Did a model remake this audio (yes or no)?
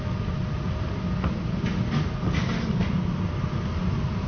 no